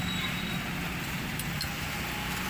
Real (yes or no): yes